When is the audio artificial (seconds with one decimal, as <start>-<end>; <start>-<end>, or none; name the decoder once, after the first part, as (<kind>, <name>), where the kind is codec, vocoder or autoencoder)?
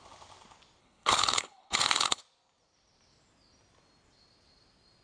0.8-2.2 (codec, HILCodec)